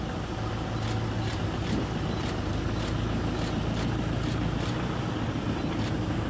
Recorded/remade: recorded